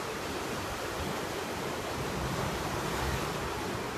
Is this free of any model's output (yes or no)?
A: yes